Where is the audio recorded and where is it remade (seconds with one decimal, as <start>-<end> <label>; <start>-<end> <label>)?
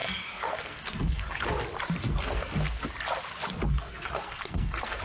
0.0-1.5 remade; 1.5-2.0 recorded; 2.0-2.8 remade; 2.8-3.6 recorded; 3.6-5.0 remade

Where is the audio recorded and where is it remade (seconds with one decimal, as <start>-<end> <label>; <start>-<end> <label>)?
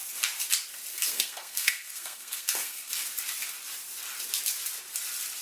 0.0-0.9 recorded; 0.9-2.9 remade; 2.9-5.4 recorded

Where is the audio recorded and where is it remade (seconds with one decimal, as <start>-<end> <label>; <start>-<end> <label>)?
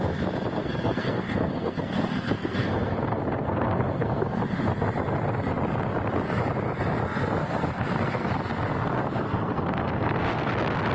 0.0-0.6 recorded; 0.6-4.4 remade; 4.4-7.4 recorded; 7.4-8.3 remade; 8.3-9.0 recorded; 9.0-10.5 remade; 10.5-10.9 recorded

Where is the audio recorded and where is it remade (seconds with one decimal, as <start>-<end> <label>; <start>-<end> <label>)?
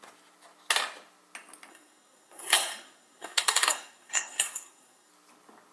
0.0-1.7 recorded; 1.7-5.1 remade; 5.1-5.7 recorded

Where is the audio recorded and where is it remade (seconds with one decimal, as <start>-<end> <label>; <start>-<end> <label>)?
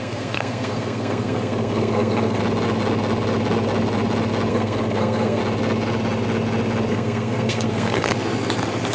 0.0-2.4 remade; 2.4-4.5 recorded; 4.5-5.4 remade; 5.4-6.9 recorded; 6.9-8.1 remade; 8.1-8.9 recorded